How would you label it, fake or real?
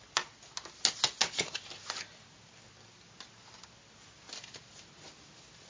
real